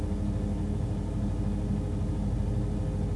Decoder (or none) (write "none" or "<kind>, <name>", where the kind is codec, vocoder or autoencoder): none